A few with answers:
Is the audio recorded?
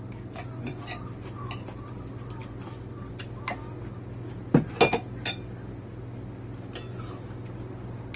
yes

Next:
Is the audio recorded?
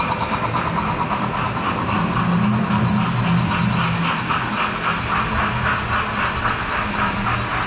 yes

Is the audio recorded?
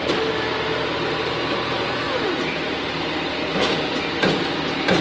yes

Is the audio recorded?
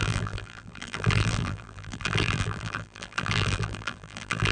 no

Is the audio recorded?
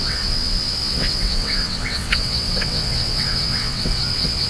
no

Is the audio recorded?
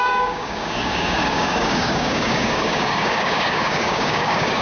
no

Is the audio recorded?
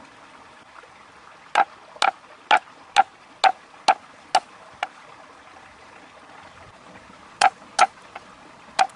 yes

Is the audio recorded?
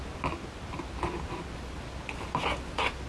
yes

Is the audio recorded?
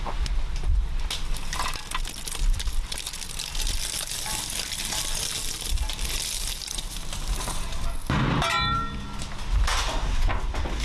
yes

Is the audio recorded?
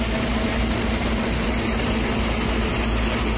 yes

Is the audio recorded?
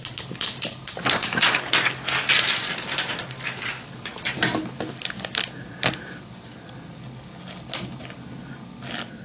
yes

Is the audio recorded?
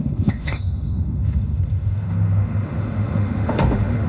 no